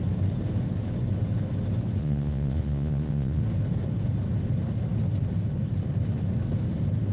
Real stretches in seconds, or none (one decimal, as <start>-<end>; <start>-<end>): 0.0-2.0; 3.4-7.1